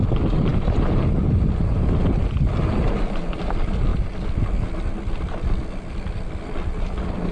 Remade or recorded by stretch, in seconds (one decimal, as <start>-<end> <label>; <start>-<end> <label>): 0.0-3.9 remade; 3.9-6.3 recorded; 6.3-7.3 remade

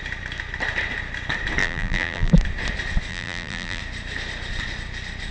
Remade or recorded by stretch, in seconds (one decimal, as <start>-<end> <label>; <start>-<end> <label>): 0.0-1.6 recorded; 1.6-2.3 remade; 2.3-3.1 recorded; 3.1-3.8 remade; 3.8-5.3 recorded